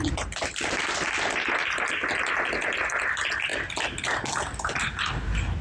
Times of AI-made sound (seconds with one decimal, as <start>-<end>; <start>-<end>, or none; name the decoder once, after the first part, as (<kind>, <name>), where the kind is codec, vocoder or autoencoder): none